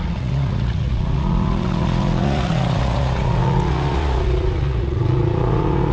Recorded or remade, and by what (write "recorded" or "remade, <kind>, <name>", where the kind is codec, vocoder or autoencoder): remade, vocoder, Vocos